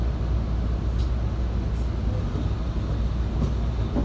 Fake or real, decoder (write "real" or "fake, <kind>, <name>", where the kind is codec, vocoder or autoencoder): real